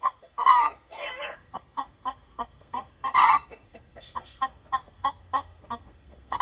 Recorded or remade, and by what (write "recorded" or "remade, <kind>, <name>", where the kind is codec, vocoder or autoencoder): remade, codec, SNAC